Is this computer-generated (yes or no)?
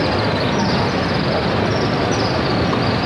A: no